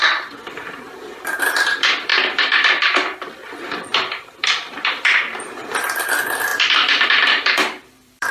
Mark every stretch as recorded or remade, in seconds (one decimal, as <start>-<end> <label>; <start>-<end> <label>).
0.0-8.3 remade